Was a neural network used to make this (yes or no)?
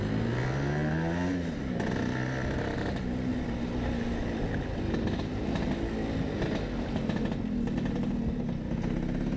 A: no